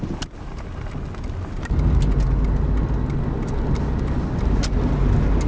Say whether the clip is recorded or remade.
recorded